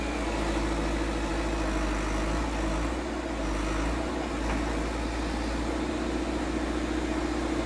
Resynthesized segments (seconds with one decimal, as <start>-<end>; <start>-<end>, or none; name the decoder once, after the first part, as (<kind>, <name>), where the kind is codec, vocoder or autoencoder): none